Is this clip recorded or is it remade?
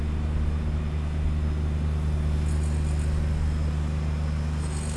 recorded